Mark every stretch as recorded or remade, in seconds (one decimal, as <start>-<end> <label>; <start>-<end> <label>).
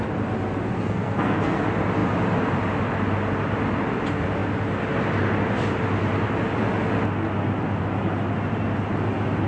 0.0-0.7 recorded; 0.7-1.6 remade; 1.6-9.5 recorded